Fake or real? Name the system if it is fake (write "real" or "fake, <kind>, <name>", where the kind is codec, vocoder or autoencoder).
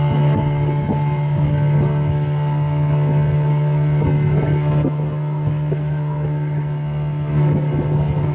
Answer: fake, codec, SNAC